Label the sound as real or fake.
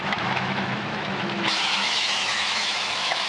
fake